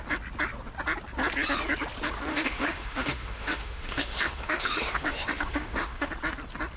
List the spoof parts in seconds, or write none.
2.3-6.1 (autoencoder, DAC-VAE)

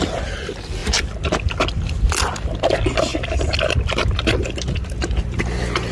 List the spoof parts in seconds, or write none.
none

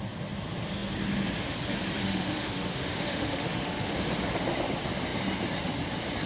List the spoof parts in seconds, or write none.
2.0-3.9 (autoencoder, DAC-VAE)